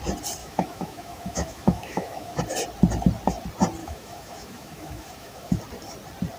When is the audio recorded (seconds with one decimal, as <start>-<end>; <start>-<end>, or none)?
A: 0.0-0.4; 2.4-3.8; 5.6-6.4